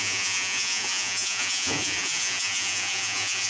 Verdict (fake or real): fake